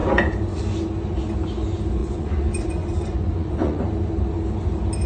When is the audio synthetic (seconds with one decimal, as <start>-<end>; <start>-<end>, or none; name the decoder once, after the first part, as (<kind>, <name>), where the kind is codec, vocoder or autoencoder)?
0.0-0.6 (vocoder, Vocos); 2.0-3.8